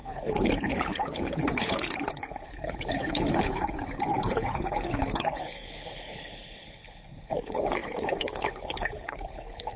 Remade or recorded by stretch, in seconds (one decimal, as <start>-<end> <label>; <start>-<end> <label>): 0.0-9.8 remade